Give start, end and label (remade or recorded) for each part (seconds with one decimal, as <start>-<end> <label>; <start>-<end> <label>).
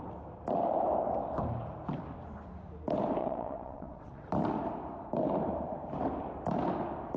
0.0-3.2 recorded; 3.2-4.3 remade; 4.3-7.2 recorded